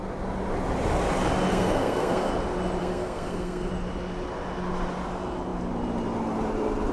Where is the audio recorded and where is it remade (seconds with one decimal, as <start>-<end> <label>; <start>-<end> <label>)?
0.0-1.5 recorded; 1.5-2.3 remade; 2.3-2.8 recorded; 2.8-3.7 remade; 3.7-6.9 recorded